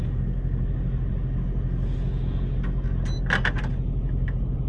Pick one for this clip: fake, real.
real